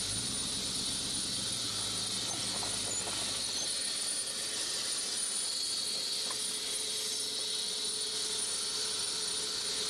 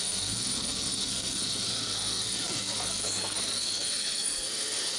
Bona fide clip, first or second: first